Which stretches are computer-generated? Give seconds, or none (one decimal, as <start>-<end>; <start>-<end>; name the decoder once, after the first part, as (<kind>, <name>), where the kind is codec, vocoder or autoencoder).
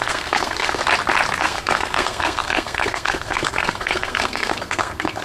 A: 0.0-0.8 (codec, SNAC); 1.4-5.2